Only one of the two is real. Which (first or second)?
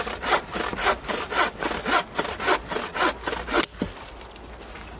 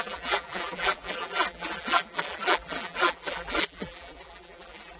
first